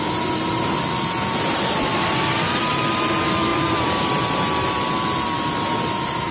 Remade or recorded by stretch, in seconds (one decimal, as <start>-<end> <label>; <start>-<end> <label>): 0.0-1.9 recorded; 1.9-2.6 remade; 2.6-3.5 recorded; 3.5-4.9 remade; 4.9-6.3 recorded